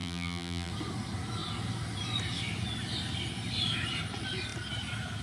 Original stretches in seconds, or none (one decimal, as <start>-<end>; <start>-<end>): 0.7-5.2